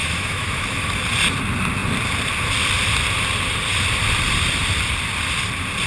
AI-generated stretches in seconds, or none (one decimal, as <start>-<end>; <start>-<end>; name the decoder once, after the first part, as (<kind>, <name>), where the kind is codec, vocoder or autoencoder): 0.0-1.0 (autoencoder, DAC-VAE)